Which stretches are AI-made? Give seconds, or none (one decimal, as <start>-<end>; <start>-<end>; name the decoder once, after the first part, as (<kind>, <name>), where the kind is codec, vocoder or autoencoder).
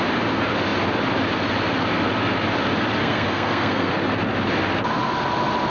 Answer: 3.0-3.9 (codec, SNAC)